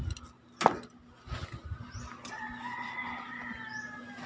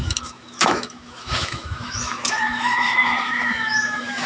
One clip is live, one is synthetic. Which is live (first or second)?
first